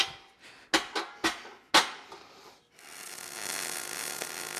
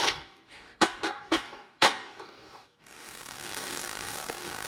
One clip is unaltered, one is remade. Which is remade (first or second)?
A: second